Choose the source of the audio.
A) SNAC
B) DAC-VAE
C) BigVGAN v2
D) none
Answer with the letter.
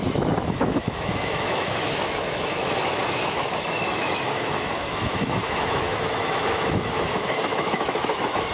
B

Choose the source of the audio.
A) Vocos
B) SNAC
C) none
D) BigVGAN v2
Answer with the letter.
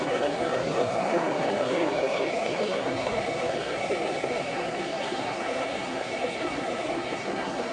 B